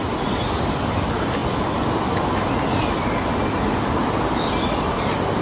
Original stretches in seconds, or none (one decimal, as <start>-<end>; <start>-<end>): 0.0-5.4